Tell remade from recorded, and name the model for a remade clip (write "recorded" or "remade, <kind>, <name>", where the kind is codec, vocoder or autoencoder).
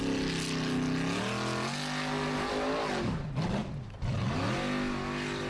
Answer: recorded